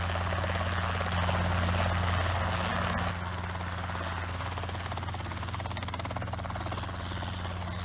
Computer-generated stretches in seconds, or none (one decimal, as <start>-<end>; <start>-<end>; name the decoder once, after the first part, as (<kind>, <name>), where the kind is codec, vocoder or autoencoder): none